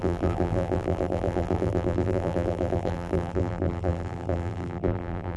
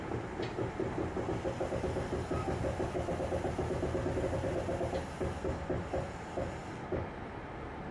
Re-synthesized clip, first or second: first